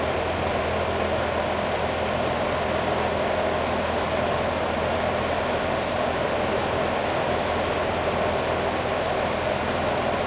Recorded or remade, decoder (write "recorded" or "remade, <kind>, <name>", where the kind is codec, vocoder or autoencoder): recorded